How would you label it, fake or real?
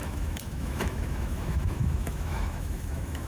fake